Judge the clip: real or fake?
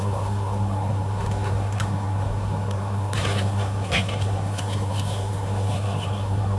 fake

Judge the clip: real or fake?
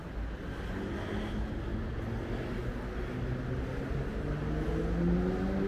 real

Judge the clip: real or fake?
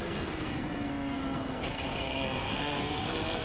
fake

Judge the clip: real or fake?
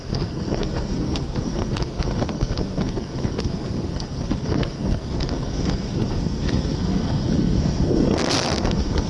fake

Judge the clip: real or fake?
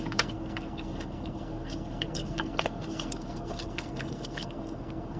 fake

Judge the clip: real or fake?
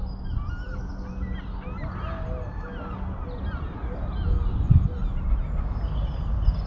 real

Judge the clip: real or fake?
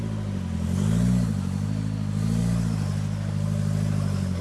real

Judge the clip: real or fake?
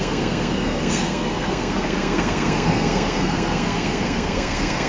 fake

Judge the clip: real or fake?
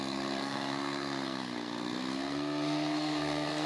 fake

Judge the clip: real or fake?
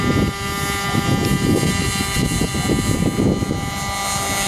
real